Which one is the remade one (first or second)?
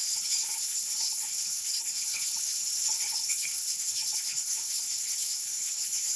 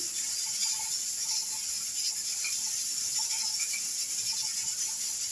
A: first